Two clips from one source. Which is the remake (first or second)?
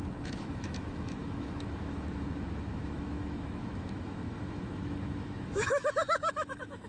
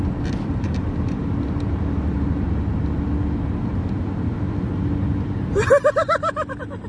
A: first